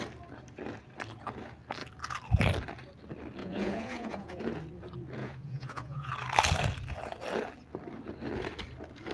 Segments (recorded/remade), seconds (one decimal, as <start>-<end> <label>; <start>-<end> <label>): 0.0-3.4 recorded; 3.4-4.4 remade; 4.4-5.2 recorded; 5.2-6.1 remade; 6.1-9.1 recorded